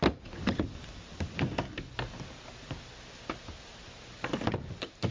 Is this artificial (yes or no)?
no